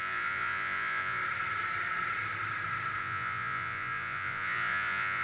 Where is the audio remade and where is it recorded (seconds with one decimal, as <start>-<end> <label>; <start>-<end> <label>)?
0.0-1.2 remade; 1.2-3.0 recorded; 3.0-5.2 remade